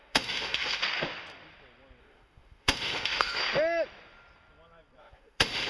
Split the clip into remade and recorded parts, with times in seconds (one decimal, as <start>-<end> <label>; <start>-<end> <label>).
0.0-0.8 remade; 0.8-2.0 recorded; 2.0-3.4 remade; 3.4-5.0 recorded; 5.0-5.7 remade